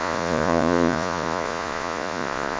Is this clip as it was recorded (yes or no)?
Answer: no